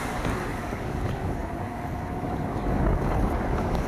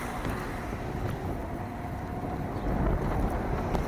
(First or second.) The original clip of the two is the second